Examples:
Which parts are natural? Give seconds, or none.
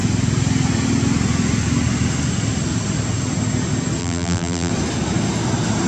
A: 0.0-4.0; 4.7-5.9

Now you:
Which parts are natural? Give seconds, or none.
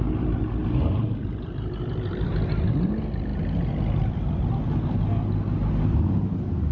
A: 0.0-0.6; 2.9-6.7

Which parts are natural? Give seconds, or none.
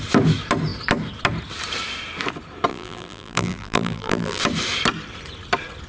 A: 0.0-2.7; 4.4-5.9